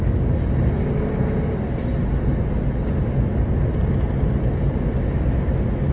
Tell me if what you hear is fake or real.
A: real